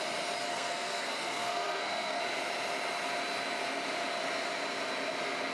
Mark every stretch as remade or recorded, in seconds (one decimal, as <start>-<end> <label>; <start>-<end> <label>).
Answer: 0.0-0.5 recorded; 0.5-2.2 remade; 2.2-5.5 recorded